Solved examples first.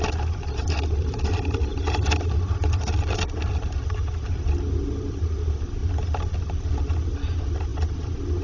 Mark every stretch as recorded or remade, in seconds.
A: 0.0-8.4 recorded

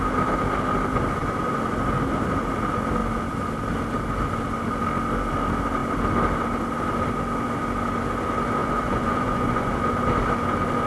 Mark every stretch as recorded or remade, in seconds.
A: 0.0-8.6 recorded; 8.6-9.7 remade; 9.7-10.9 recorded